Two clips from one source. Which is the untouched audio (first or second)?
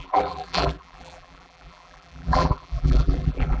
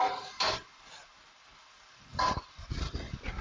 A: second